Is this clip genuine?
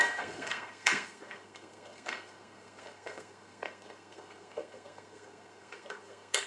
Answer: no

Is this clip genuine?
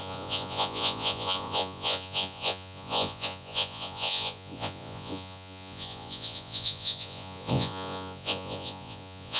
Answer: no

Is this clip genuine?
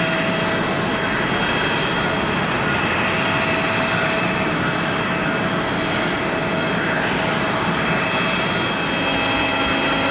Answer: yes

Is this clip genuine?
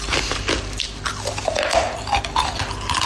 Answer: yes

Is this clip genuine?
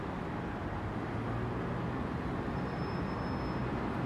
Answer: yes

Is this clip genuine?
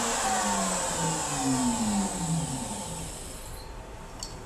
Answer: yes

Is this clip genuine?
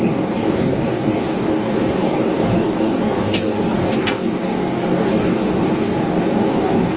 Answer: no